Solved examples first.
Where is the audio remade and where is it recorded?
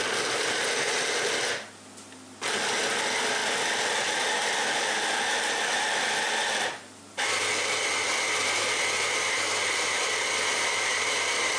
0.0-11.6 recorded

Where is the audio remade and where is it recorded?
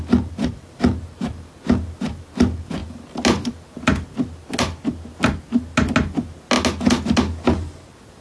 0.0-8.2 recorded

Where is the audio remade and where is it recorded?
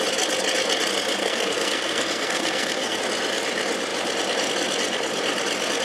0.0-1.2 recorded; 1.2-3.0 remade; 3.0-5.8 recorded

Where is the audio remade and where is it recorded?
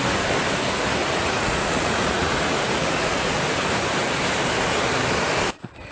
0.0-1.0 recorded; 1.0-3.4 remade; 3.4-5.9 recorded